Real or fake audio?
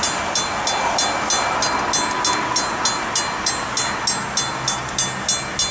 real